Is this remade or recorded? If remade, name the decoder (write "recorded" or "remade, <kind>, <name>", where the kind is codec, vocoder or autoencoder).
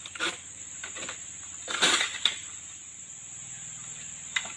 recorded